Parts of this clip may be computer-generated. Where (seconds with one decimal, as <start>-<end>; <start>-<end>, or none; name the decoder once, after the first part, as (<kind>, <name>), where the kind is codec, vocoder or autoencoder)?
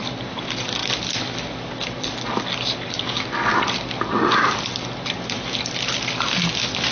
none